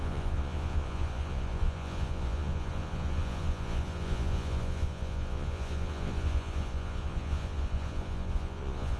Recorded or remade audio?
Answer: remade